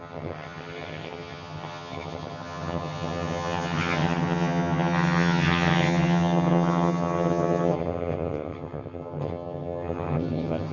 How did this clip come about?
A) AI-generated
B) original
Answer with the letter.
A